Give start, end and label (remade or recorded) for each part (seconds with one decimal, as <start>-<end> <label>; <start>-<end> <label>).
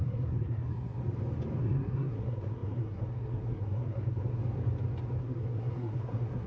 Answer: 0.0-1.0 remade; 1.0-1.6 recorded; 1.6-4.4 remade; 4.4-5.2 recorded; 5.2-6.5 remade